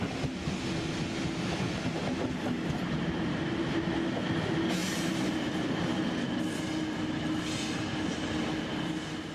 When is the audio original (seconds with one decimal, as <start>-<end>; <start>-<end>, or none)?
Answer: 0.0-2.8; 3.7-4.8; 6.0-9.3